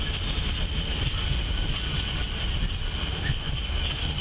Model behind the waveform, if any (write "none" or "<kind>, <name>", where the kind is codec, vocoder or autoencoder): none